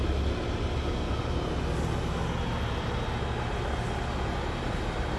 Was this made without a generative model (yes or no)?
yes